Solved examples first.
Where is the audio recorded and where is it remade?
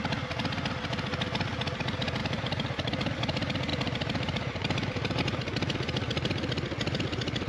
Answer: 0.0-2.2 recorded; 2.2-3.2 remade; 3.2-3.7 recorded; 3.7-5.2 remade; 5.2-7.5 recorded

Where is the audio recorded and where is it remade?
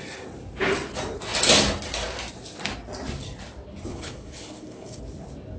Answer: 0.0-3.9 recorded; 3.9-5.0 remade; 5.0-5.6 recorded